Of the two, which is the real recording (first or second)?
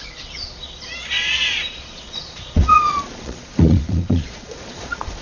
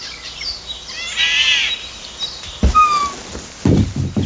second